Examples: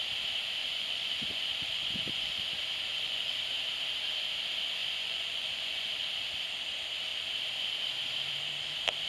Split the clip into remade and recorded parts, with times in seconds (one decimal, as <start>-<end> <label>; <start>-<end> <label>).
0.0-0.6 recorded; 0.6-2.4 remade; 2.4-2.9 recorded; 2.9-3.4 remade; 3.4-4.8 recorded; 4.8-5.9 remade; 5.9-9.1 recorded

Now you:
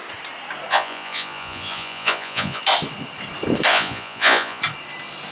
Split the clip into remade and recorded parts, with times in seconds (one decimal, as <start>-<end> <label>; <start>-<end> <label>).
0.0-0.7 recorded; 0.7-2.6 remade; 2.6-3.7 recorded; 3.7-4.6 remade; 4.6-5.3 recorded

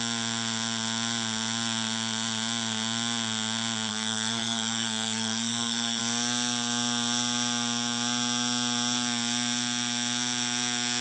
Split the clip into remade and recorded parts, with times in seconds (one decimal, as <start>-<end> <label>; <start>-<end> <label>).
0.0-3.9 recorded; 3.9-6.0 remade; 6.0-11.0 recorded

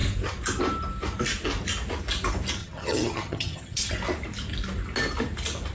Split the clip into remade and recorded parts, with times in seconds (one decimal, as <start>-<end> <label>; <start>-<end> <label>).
0.0-2.6 recorded; 2.6-3.9 remade; 3.9-5.7 recorded

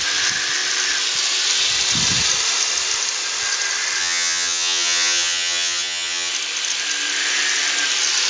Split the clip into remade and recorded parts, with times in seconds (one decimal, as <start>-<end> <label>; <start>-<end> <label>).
0.0-4.0 recorded; 4.0-6.3 remade; 6.3-8.3 recorded

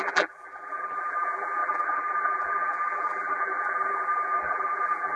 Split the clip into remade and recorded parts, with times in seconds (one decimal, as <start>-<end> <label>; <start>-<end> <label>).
0.0-5.2 remade

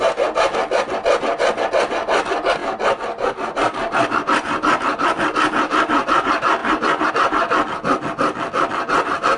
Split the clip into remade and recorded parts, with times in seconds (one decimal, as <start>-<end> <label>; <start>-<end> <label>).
0.0-6.6 recorded; 6.6-7.1 remade; 7.1-9.4 recorded